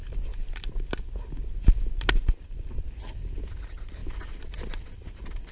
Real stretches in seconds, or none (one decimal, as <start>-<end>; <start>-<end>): 0.0-5.5